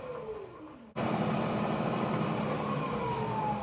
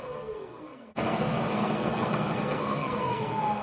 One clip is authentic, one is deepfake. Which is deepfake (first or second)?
second